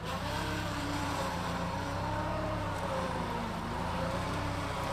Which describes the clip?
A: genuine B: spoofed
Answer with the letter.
B